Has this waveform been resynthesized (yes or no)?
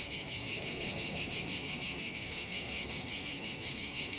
yes